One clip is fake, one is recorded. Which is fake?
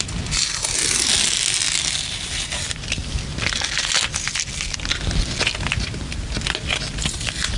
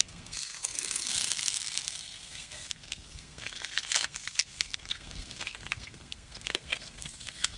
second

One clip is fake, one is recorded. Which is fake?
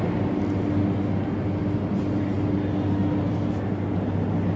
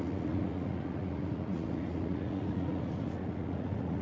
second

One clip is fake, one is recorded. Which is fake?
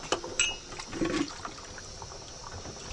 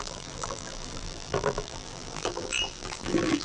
second